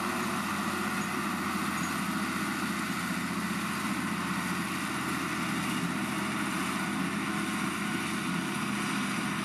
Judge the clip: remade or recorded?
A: recorded